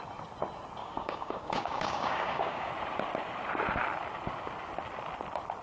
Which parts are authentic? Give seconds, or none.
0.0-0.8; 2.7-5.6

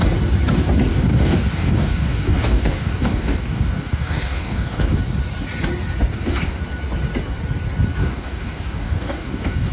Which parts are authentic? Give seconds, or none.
0.0-0.9; 5.0-6.1; 6.6-8.0

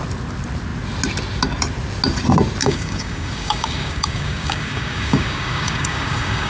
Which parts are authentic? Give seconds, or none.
0.0-2.6

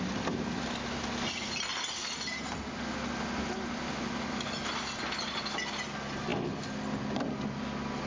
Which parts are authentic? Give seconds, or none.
0.0-8.1

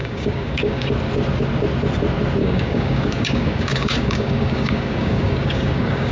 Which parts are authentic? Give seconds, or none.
0.9-2.4

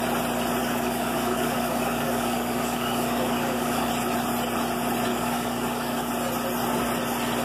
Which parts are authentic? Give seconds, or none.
0.0-0.6; 3.9-5.1; 6.1-7.4

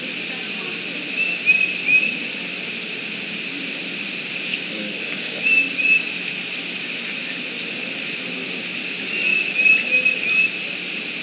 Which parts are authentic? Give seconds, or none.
0.0-4.5; 5.4-11.2